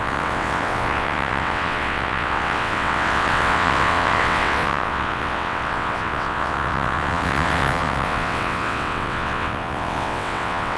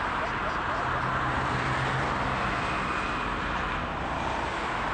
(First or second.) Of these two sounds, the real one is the second